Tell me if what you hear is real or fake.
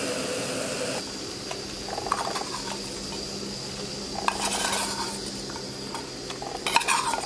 real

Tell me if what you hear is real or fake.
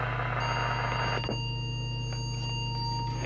real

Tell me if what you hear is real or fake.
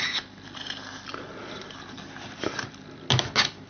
real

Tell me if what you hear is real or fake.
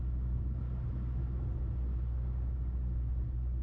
real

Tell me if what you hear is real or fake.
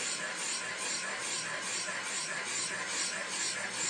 real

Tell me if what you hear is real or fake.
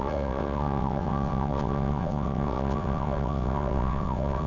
fake